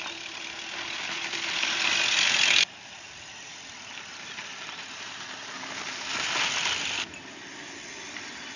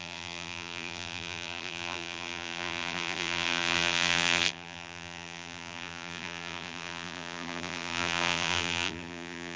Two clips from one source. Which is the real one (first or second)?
first